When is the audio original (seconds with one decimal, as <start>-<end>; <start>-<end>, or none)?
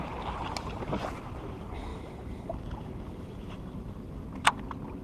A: 0.0-1.9; 4.6-5.0